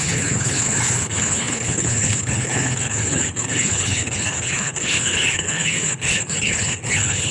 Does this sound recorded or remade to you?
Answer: remade